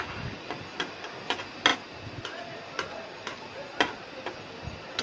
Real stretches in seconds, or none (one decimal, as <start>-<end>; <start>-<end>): 0.0-5.0